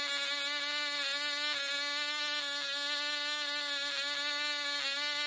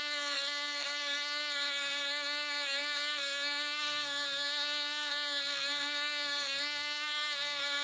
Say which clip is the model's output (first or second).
second